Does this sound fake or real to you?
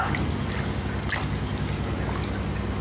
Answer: real